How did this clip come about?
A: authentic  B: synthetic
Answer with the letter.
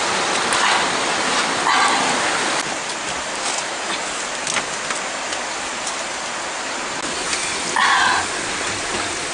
A